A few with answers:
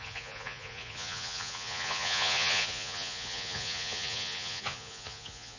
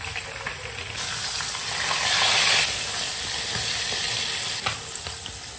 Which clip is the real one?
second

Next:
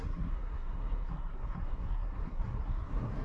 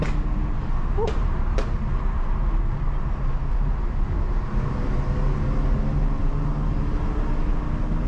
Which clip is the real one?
second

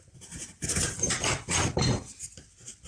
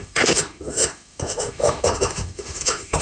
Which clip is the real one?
first